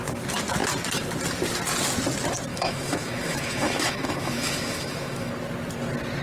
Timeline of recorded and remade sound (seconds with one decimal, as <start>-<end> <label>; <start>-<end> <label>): 0.0-2.5 recorded; 2.5-5.3 remade; 5.3-6.2 recorded